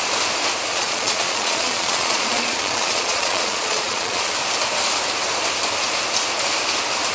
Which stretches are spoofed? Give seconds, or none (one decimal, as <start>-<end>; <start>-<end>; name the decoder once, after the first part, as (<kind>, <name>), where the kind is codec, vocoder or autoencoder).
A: 0.7-4.3 (vocoder, Vocos)